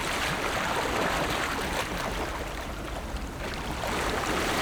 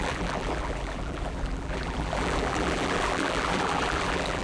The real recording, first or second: first